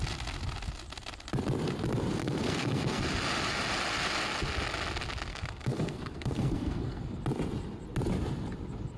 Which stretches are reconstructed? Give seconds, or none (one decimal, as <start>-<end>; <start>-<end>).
2.2-3.0; 5.3-7.2